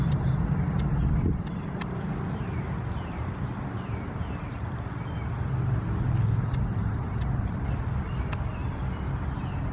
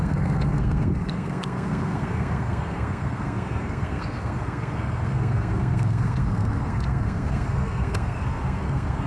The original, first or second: first